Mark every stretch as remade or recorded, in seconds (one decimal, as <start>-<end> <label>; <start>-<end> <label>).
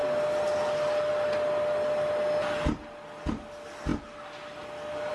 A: 0.0-5.1 recorded